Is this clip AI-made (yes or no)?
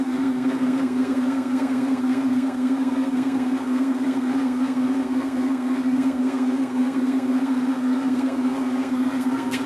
yes